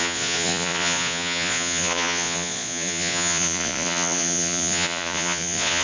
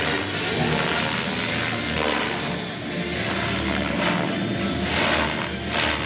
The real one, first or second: second